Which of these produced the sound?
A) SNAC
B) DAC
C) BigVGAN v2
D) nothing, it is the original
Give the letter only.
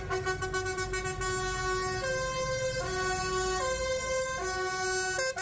D